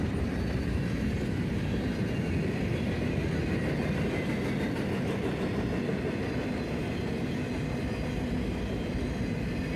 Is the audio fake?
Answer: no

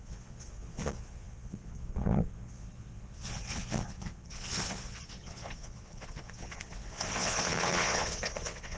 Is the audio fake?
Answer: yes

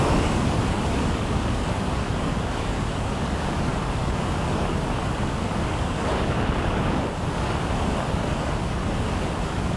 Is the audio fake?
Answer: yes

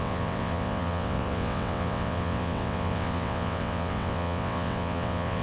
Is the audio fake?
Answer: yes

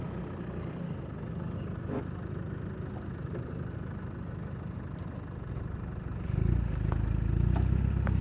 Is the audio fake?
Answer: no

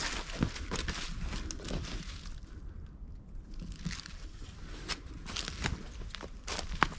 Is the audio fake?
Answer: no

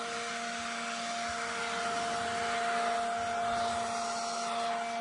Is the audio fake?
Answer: no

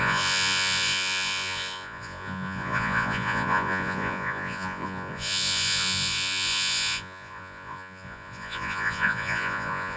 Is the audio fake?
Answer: yes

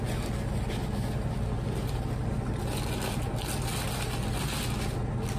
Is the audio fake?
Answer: no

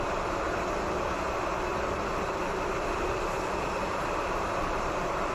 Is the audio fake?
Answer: yes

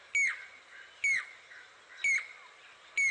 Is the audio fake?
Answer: no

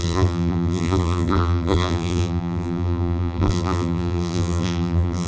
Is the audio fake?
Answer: yes